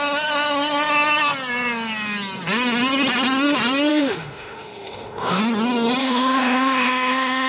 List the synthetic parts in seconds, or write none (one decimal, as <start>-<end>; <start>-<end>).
3.9-5.4; 6.0-7.5